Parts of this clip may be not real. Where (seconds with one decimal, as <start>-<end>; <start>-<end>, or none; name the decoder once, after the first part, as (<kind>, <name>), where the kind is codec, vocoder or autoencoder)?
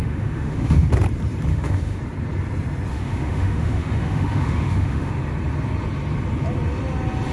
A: 0.0-0.9 (autoencoder, DAC-VAE); 1.5-2.0; 2.9-5.1